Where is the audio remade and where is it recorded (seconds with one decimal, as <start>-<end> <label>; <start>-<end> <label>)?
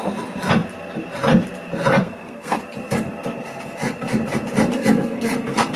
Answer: 0.0-2.0 recorded; 2.0-2.6 remade; 2.6-4.7 recorded; 4.7-5.8 remade